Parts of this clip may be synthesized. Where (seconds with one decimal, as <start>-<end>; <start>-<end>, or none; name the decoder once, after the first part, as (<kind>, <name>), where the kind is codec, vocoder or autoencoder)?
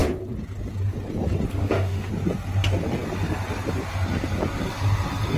1.6-2.1 (autoencoder, DAC-VAE)